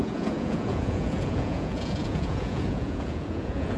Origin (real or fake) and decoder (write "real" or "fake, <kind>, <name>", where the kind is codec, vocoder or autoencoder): fake, vocoder, Vocos